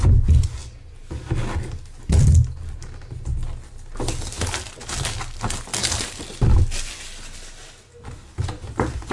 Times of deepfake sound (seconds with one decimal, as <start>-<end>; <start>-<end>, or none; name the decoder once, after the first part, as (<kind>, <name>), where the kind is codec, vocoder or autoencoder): none